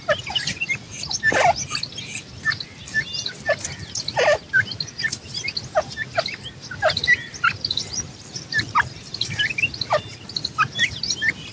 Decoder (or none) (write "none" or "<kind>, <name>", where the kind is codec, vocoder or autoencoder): none